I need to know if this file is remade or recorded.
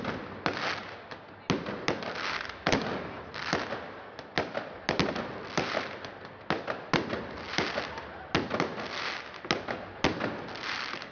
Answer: recorded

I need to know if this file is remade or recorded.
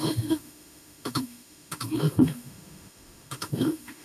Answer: remade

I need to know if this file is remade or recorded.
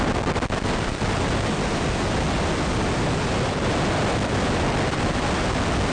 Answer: recorded